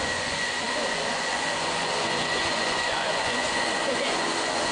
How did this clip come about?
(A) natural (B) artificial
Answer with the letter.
B